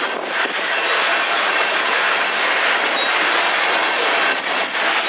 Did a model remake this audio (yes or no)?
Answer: no